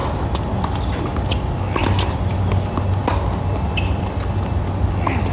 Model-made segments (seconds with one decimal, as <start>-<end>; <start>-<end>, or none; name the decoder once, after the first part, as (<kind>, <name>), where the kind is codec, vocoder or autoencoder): none